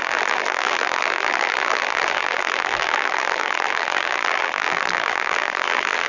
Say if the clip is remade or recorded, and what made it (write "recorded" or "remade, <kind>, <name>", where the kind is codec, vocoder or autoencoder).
remade, vocoder, BigVGAN v2